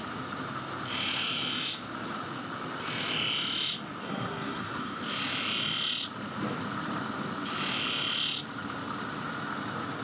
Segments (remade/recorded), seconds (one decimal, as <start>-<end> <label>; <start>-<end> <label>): 0.0-4.0 recorded; 4.0-5.0 remade; 5.0-10.0 recorded